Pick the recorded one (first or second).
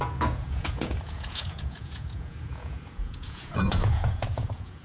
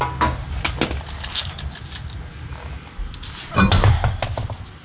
second